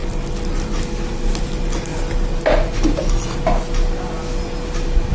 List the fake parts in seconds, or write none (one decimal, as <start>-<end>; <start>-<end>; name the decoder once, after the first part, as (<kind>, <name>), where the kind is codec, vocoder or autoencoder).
none